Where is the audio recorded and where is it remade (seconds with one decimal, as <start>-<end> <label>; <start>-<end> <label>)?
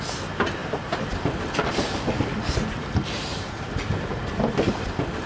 0.0-0.6 recorded; 0.6-1.7 remade; 1.7-3.3 recorded; 3.3-4.7 remade; 4.7-5.3 recorded